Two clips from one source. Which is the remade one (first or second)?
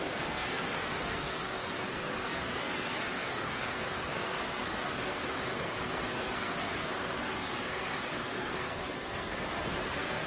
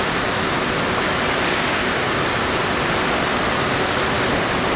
first